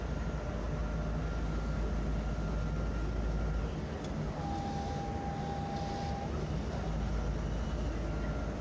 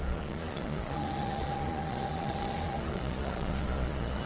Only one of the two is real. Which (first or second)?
first